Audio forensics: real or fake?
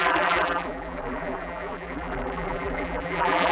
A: fake